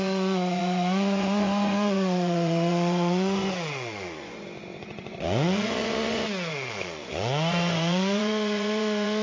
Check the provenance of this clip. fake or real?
fake